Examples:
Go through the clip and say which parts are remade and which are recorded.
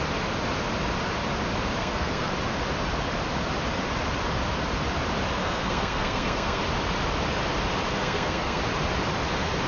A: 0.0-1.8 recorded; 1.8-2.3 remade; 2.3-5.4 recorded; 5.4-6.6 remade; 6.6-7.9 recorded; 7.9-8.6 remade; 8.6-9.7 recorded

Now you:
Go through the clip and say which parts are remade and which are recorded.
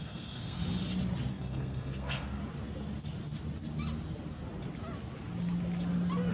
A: 0.0-0.6 remade; 0.6-1.3 recorded; 1.3-2.4 remade; 2.4-6.3 recorded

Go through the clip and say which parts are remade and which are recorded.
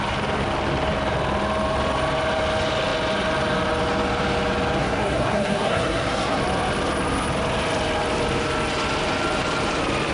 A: 0.0-4.8 recorded; 4.8-6.4 remade; 6.4-10.1 recorded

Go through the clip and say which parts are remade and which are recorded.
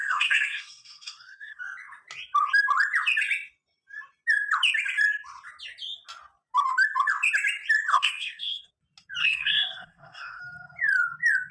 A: 0.0-1.6 remade; 1.6-7.9 recorded; 7.9-8.7 remade; 8.7-9.2 recorded; 9.2-10.4 remade; 10.4-11.5 recorded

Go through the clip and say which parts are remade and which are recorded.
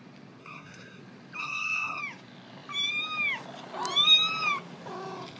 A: 0.0-0.4 recorded; 0.4-1.0 remade; 1.0-1.4 recorded; 1.4-2.0 remade; 2.0-5.4 recorded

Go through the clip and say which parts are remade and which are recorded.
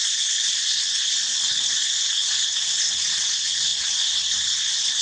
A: 0.0-5.0 recorded